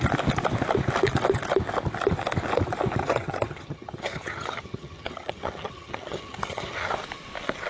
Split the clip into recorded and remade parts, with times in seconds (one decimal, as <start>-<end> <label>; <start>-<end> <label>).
0.0-3.0 recorded; 3.0-6.9 remade; 6.9-7.7 recorded